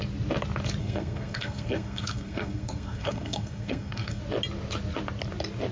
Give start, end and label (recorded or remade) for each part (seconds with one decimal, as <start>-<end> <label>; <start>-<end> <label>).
0.0-0.8 recorded; 0.8-4.2 remade; 4.2-5.7 recorded